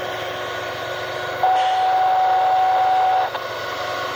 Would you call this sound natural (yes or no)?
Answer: yes